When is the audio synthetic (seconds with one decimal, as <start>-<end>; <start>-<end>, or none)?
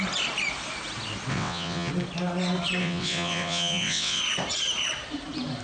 1.3-1.9; 2.8-4.2